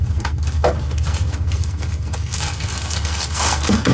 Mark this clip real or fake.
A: fake